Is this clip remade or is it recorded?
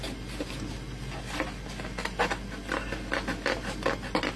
recorded